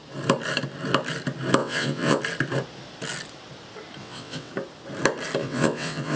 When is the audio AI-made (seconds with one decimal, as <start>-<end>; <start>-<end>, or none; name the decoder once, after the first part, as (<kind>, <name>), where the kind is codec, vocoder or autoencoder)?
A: 1.6-2.2 (vocoder, WaveNeXt); 4.0-4.5; 5.4-6.2